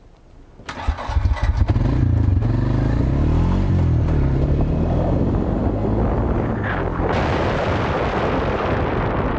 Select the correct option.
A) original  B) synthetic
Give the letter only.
A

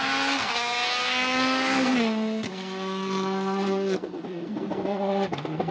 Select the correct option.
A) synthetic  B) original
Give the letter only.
A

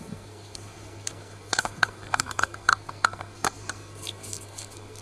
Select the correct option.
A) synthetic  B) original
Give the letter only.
A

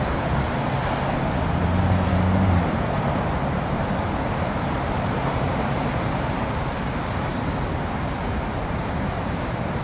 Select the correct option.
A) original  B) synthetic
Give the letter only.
B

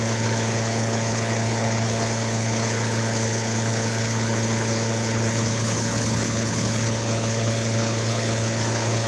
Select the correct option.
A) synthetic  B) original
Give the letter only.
A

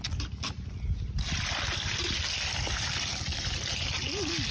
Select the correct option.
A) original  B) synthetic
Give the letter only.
A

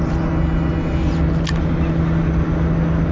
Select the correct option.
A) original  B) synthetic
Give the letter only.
A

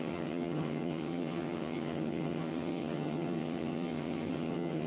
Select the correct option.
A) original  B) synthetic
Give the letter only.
B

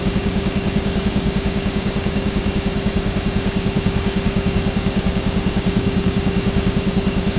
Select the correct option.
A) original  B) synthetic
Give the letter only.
B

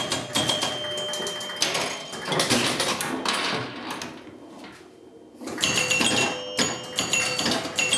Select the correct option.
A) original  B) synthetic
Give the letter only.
A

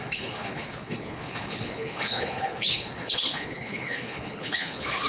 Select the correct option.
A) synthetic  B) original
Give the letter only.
A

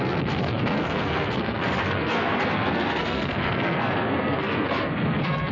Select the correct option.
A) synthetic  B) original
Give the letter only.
A